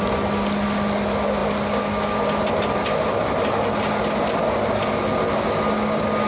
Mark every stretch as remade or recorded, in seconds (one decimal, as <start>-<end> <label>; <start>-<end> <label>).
0.0-6.3 recorded